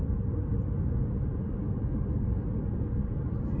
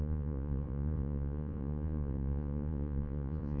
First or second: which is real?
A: first